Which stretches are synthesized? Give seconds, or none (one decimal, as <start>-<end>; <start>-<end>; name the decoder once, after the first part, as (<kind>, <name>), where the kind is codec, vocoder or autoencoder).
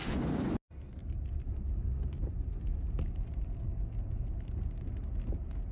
none